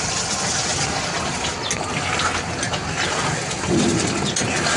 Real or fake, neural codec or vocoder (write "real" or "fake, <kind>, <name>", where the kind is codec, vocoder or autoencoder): real